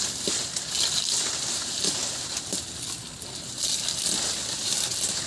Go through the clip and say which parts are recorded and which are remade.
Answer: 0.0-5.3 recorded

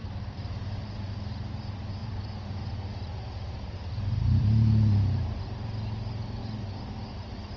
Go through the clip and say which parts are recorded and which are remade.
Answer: 0.0-1.1 remade; 1.1-2.0 recorded; 2.0-5.4 remade; 5.4-6.4 recorded; 6.4-7.6 remade

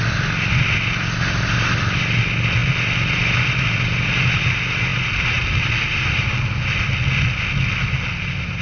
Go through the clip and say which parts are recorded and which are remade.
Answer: 0.0-8.6 recorded

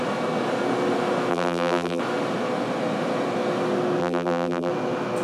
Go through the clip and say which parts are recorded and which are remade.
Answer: 0.0-1.3 recorded; 1.3-2.0 remade; 2.0-4.0 recorded; 4.0-4.7 remade; 4.7-5.2 recorded